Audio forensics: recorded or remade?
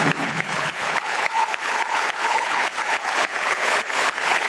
remade